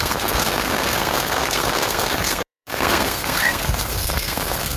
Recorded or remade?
remade